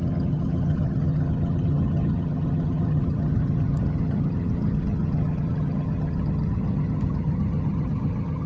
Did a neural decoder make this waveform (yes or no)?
yes